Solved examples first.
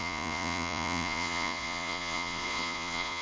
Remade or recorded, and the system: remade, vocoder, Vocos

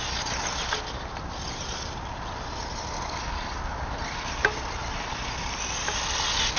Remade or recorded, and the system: recorded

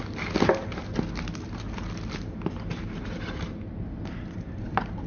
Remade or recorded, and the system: recorded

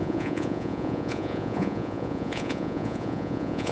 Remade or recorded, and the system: remade, vocoder, Vocos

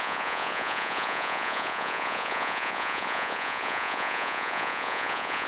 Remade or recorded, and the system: remade, vocoder, Vocos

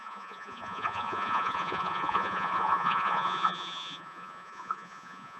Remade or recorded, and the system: remade, vocoder, Vocos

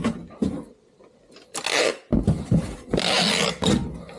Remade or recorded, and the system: recorded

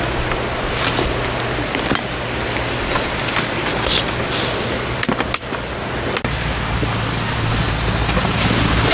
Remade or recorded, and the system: recorded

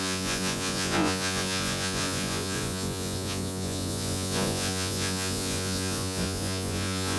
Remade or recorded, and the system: remade, vocoder, Vocos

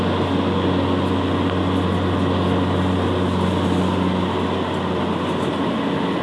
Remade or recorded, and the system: recorded